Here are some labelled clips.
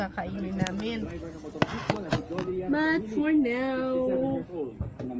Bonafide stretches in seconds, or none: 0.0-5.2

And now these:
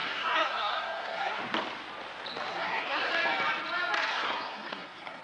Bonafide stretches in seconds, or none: 1.4-2.5; 3.1-4.1

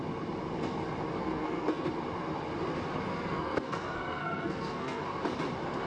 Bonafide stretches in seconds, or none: 0.0-1.2; 1.9-3.1; 5.0-5.9

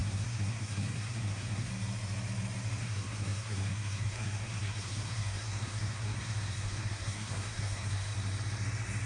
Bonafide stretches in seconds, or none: 1.7-2.8; 8.1-9.1

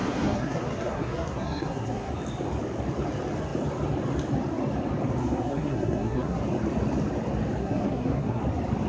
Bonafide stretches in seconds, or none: 2.1-5.2; 6.4-7.6; 8.4-8.9

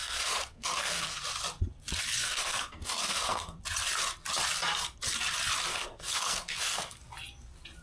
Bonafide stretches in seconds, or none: 1.2-2.2; 3.6-5.7; 7.0-7.8

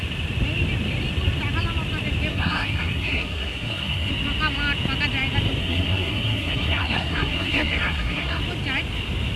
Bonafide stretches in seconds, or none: 0.0-2.3; 4.1-5.6; 8.4-9.4